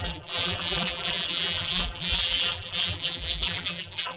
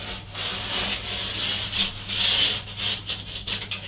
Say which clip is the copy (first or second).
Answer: first